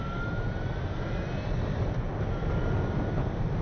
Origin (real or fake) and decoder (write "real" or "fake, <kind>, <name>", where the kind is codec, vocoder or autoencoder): real